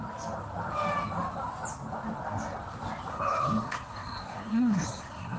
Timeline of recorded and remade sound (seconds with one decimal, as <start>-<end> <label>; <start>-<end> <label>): 0.0-3.1 recorded; 3.1-5.4 remade

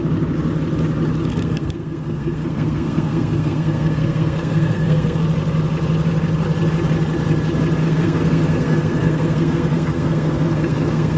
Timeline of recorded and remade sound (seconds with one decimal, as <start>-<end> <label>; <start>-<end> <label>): 0.0-1.3 recorded; 1.3-5.2 remade; 5.2-7.8 recorded; 7.8-11.2 remade

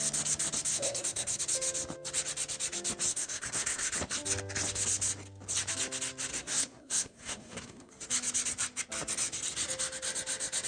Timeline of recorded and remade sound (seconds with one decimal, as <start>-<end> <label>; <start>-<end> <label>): 0.0-0.7 recorded; 0.7-1.4 remade; 1.4-3.1 recorded; 3.1-3.9 remade; 3.9-6.3 recorded; 6.3-7.9 remade; 7.9-10.7 recorded

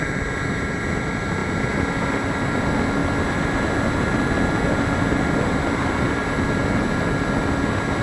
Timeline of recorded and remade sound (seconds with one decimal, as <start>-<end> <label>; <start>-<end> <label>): 0.0-8.0 recorded

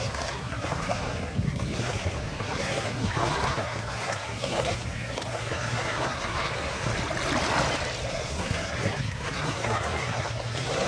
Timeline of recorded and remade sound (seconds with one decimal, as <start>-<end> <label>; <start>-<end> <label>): 0.0-6.9 remade; 6.9-8.1 recorded; 8.1-10.9 remade